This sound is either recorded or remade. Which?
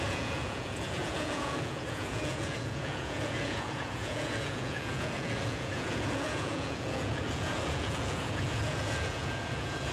remade